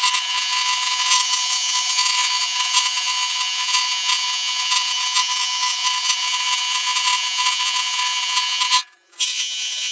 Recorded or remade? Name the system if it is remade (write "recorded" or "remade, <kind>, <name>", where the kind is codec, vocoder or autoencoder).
remade, vocoder, Vocos